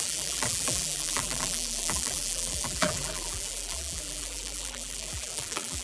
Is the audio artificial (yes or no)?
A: yes